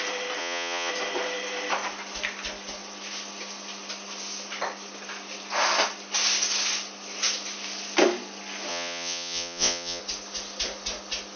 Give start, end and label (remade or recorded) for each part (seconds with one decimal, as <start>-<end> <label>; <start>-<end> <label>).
0.0-0.4 recorded; 0.4-0.9 remade; 0.9-8.7 recorded; 8.7-10.0 remade; 10.0-11.4 recorded